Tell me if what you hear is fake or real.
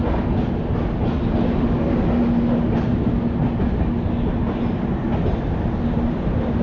real